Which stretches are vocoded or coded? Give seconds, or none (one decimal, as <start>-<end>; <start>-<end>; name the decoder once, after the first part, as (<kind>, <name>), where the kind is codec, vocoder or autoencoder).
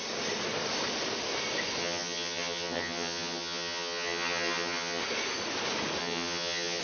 1.8-5.0 (vocoder, HiFi-GAN); 6.0-6.8